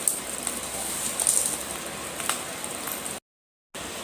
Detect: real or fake real